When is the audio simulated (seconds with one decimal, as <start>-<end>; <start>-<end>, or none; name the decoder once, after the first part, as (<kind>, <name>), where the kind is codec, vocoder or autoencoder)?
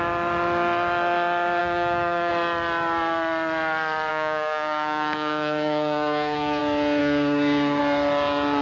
1.6-2.3 (codec, DAC); 4.1-6.6; 7.0-7.8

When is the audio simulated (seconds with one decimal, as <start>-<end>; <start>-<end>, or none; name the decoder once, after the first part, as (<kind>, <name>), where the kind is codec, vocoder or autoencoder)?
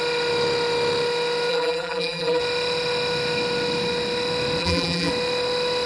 1.5-2.4 (vocoder, BigVGAN v2); 4.6-5.1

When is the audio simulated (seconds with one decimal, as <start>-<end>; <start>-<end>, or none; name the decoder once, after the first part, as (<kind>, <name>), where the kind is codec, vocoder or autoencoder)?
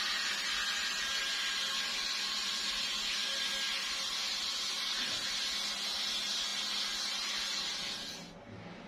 none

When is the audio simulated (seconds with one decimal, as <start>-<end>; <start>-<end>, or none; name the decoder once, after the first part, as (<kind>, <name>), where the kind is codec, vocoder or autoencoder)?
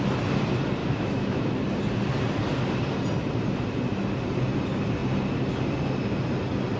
0.8-1.5 (autoencoder, DAC-VAE)